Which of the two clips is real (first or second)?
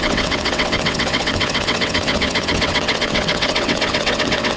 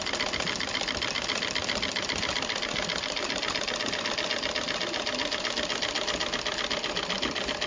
second